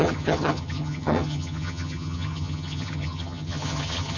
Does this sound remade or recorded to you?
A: remade